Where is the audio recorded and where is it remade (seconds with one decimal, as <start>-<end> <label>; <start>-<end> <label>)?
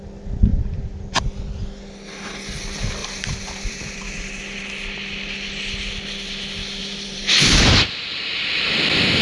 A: 0.0-0.5 recorded; 0.5-1.2 remade; 1.2-3.0 recorded; 3.0-4.4 remade; 4.4-6.8 recorded; 6.8-7.7 remade; 7.7-9.2 recorded